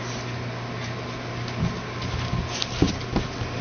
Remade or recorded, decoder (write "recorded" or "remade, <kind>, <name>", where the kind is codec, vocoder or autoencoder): recorded